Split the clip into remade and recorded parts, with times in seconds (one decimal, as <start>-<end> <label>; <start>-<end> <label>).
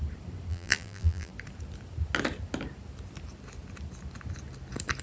0.0-0.5 recorded; 0.5-1.3 remade; 1.3-5.0 recorded